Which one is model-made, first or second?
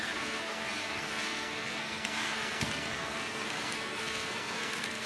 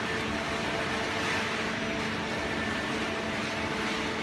first